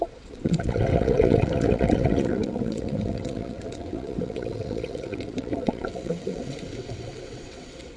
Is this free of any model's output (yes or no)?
no